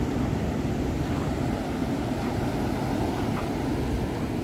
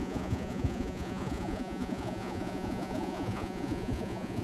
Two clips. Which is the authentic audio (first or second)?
first